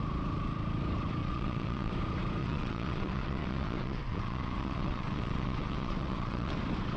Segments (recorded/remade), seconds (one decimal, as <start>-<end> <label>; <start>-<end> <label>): 0.0-1.2 recorded; 1.2-1.9 remade; 1.9-2.4 recorded; 2.4-6.6 remade; 6.6-7.0 recorded